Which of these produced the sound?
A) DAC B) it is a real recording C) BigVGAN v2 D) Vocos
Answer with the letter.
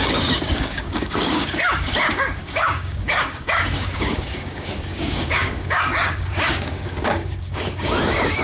A